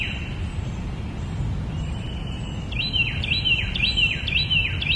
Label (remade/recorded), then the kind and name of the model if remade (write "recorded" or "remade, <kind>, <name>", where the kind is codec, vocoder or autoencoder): recorded